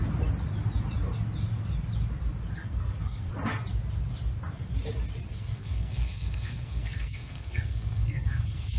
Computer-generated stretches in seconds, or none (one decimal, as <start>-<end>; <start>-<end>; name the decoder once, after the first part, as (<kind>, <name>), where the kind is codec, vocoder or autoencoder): 2.6-3.3 (codec, SNAC); 5.3-8.8